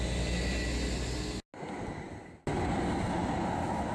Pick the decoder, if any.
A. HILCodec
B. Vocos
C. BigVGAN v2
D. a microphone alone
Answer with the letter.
D